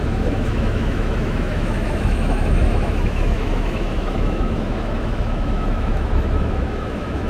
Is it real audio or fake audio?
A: fake